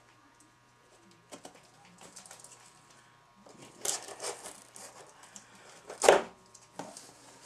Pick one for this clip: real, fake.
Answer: fake